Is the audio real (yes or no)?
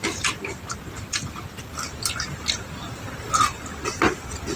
yes